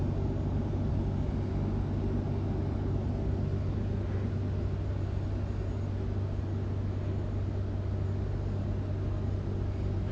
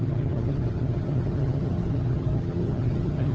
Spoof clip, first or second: second